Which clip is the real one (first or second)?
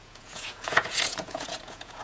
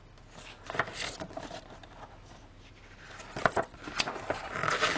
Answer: second